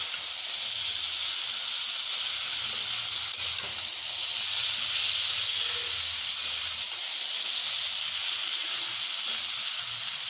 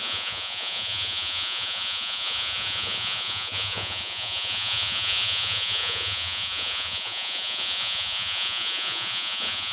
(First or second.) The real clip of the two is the first